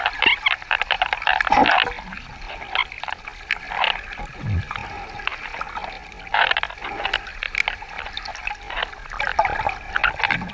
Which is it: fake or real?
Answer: real